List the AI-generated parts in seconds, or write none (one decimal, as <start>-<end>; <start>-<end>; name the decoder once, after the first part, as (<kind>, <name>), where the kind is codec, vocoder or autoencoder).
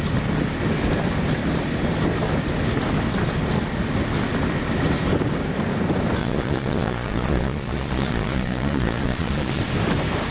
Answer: 6.2-9.6 (vocoder, Vocos)